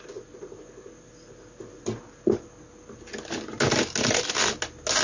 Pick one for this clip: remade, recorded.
recorded